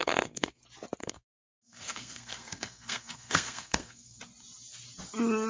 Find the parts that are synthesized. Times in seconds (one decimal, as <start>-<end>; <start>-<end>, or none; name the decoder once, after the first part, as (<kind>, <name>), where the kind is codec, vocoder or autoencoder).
0.0-0.6 (codec, SNAC); 1.0-4.2